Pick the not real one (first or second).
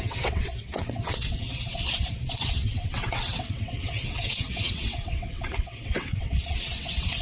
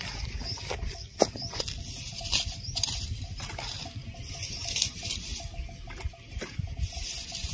first